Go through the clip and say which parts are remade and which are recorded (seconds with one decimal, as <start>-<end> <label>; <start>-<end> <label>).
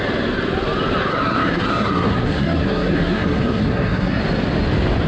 0.0-1.1 recorded; 1.1-4.2 remade; 4.2-5.1 recorded